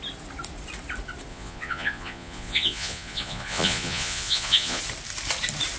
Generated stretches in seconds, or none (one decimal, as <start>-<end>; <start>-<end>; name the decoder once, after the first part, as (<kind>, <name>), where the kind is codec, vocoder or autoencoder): 1.3-4.8 (vocoder, Vocos)